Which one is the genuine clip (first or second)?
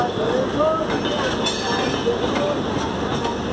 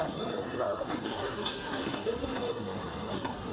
first